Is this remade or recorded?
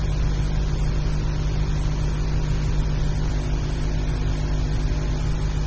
recorded